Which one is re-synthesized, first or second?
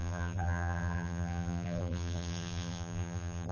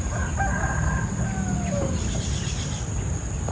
first